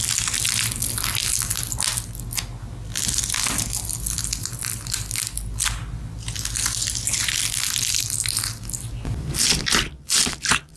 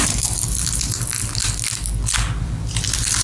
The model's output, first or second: second